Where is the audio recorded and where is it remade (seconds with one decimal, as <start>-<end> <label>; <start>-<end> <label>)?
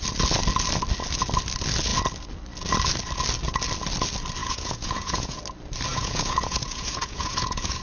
0.0-4.4 recorded; 4.4-5.4 remade; 5.4-5.9 recorded; 5.9-7.8 remade